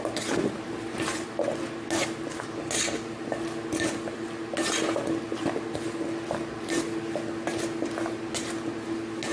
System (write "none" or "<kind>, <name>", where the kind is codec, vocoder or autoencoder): none